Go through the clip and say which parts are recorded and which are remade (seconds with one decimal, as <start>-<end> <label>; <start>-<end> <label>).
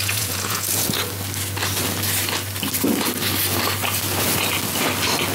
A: 0.0-1.0 remade; 1.0-5.3 recorded